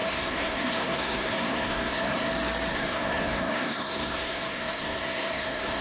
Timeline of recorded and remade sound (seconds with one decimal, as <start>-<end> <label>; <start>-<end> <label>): 0.0-2.3 remade; 2.3-2.7 recorded; 2.7-5.8 remade